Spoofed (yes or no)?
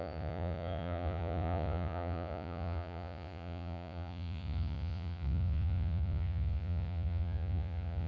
yes